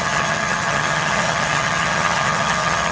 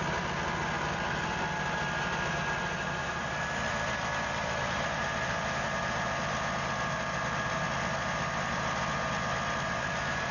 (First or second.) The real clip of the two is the second